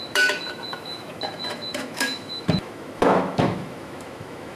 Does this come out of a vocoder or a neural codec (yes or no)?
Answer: yes